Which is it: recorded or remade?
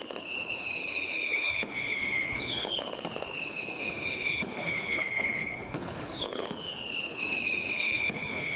remade